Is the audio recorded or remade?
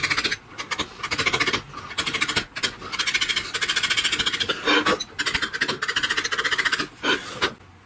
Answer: recorded